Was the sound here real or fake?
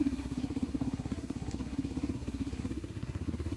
fake